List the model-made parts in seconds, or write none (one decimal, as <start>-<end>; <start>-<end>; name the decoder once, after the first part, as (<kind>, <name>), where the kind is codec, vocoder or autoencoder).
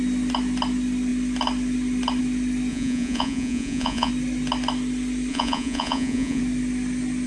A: 2.7-4.1 (vocoder, Vocos); 5.3-6.4